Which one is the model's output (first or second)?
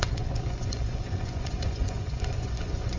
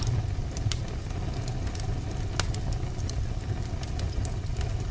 first